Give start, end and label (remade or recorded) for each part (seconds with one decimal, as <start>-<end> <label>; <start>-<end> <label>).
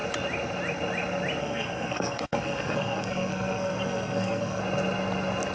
0.0-1.4 recorded; 1.4-4.6 remade; 4.6-5.5 recorded